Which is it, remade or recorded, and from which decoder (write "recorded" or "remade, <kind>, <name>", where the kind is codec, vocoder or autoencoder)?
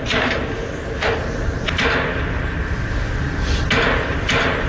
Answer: recorded